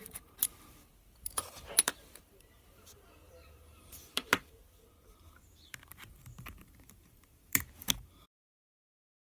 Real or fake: fake